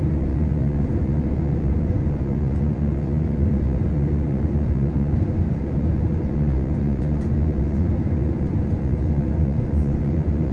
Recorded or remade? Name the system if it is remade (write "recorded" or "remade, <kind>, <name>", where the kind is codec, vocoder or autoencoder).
remade, vocoder, Vocos